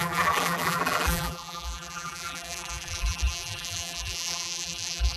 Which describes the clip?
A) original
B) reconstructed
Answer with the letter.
B